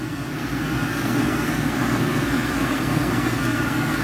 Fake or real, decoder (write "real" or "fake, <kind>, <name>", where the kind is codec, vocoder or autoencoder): fake, codec, SNAC